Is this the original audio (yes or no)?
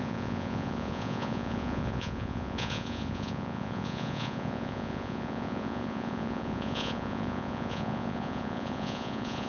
no